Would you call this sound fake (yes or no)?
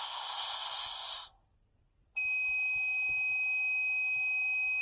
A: no